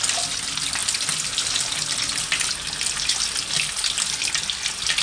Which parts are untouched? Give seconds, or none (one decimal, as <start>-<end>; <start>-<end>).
0.0-5.0